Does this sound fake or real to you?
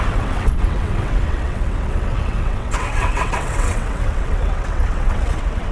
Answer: fake